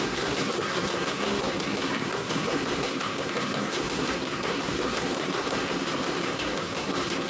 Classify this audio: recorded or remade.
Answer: remade